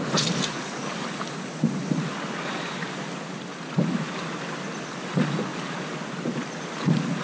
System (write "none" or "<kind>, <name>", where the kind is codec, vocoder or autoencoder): none